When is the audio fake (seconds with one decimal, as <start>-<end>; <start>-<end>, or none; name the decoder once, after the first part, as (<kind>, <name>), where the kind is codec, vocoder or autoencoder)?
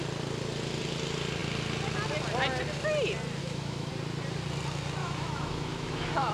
3.4-3.9 (autoencoder, DAC-VAE); 5.0-6.3